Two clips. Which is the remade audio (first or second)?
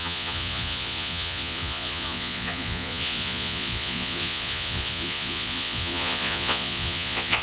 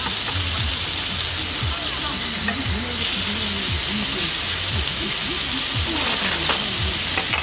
first